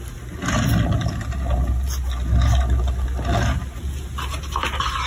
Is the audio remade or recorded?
recorded